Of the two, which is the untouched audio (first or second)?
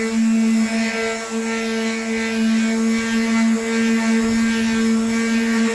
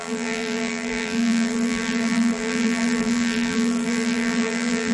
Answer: first